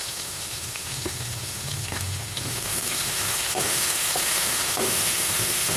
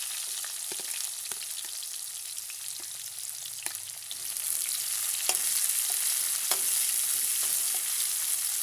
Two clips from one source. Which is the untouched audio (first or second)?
second